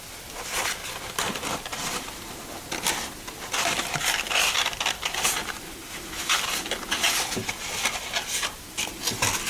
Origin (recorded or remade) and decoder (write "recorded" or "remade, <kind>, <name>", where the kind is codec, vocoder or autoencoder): recorded